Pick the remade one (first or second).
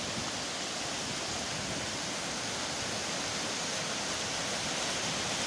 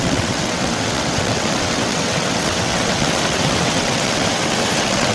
second